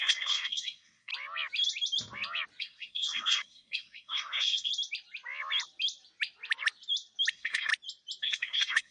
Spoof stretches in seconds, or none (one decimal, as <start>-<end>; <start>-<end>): 0.0-1.1; 2.6-4.7; 7.3-7.7; 8.2-8.9